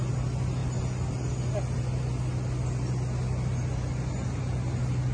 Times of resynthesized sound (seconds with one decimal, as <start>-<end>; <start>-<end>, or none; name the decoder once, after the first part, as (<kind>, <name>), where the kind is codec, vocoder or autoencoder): none